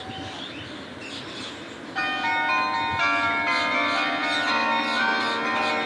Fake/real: real